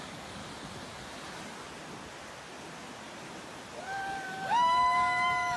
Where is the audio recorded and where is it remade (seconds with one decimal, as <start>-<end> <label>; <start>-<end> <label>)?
0.0-0.4 remade; 0.4-3.8 recorded; 3.8-5.6 remade

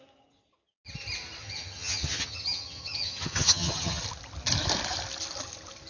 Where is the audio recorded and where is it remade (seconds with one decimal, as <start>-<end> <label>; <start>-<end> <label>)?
0.0-1.4 recorded; 1.4-4.0 remade; 4.0-5.9 recorded

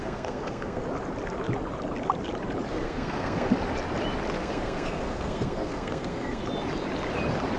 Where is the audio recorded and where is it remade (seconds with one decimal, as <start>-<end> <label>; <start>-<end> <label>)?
0.0-0.8 remade; 0.8-2.7 recorded; 2.7-3.5 remade; 3.5-4.4 recorded; 4.4-6.4 remade; 6.4-7.6 recorded

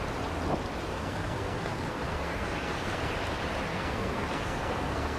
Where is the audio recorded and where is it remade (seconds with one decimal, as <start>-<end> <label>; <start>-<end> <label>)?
0.0-0.9 recorded; 0.9-3.1 remade; 3.1-3.7 recorded; 3.7-5.2 remade

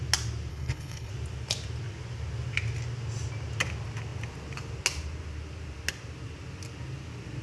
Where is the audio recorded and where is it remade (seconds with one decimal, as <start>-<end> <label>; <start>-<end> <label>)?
0.0-0.5 recorded; 0.5-1.1 remade; 1.1-7.4 recorded

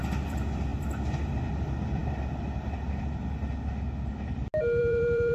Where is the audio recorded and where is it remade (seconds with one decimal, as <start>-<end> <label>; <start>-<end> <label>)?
0.0-2.0 remade; 2.0-4.8 recorded; 4.8-5.3 remade

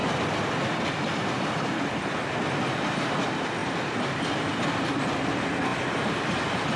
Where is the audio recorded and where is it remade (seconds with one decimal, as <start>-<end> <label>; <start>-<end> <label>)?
0.0-2.5 remade; 2.5-3.6 recorded; 3.6-4.5 remade; 4.5-6.8 recorded